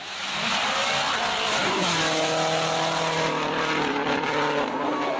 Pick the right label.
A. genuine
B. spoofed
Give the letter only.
A